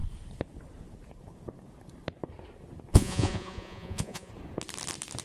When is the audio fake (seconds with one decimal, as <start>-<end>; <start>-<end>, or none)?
2.9-4.3